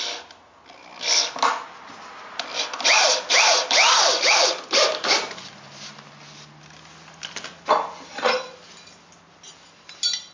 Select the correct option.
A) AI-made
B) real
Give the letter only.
B